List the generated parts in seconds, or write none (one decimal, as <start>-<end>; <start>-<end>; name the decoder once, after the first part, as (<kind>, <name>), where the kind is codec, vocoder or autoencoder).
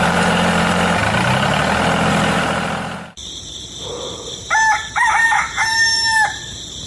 0.0-1.0 (vocoder, BigVGAN v2); 2.1-6.9